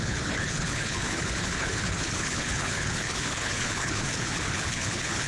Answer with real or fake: fake